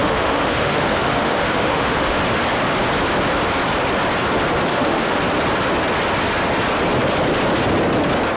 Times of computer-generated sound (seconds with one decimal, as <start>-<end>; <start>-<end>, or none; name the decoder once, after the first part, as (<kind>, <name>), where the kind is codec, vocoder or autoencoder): 0.0-2.2 (autoencoder, DAC-VAE); 4.7-5.2